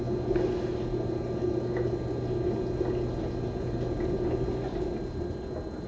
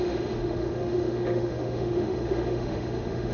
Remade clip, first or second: second